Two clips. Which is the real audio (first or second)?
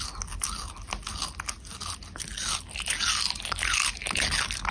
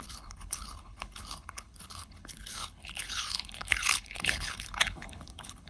first